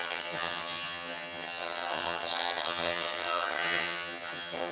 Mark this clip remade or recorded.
remade